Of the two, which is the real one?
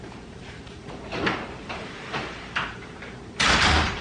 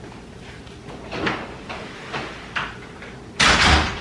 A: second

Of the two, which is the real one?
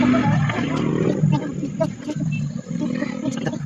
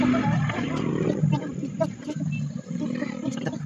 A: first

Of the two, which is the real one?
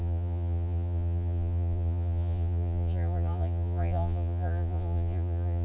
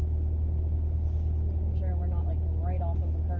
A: second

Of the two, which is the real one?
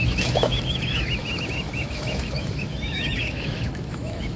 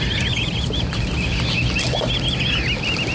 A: second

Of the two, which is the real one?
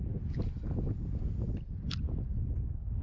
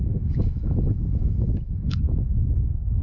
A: first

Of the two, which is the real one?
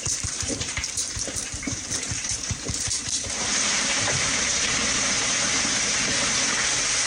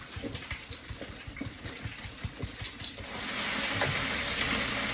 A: second